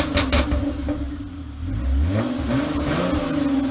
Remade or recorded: recorded